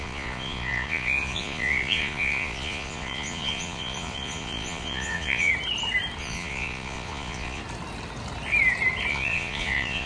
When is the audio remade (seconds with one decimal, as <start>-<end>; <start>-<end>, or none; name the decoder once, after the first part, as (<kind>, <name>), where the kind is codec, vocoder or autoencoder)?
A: 0.0-5.5 (vocoder, Vocos); 6.2-7.6; 9.1-10.1